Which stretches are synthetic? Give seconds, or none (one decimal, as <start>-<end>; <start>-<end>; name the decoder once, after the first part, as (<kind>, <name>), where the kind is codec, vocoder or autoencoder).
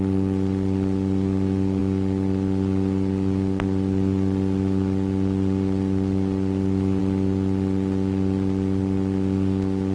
none